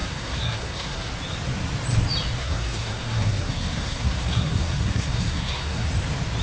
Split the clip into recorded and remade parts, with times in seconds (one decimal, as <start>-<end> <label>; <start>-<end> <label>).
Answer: 0.0-1.1 remade; 1.1-2.4 recorded; 2.4-5.9 remade; 5.9-6.4 recorded